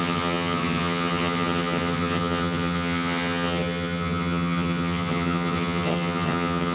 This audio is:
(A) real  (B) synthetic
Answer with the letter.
B